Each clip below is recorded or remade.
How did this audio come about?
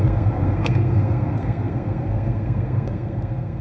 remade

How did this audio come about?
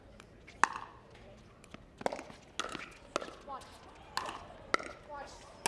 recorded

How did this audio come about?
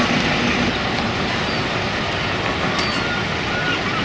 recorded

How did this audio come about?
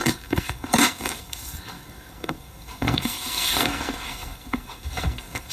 remade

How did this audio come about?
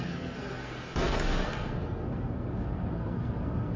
remade